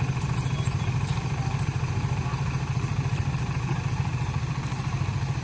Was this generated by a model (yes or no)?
yes